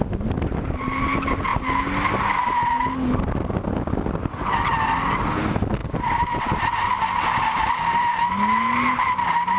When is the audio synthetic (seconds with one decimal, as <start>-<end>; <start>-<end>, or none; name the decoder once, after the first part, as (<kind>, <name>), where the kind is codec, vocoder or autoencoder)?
none